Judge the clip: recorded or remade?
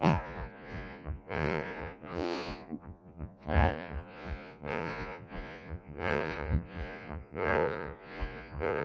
remade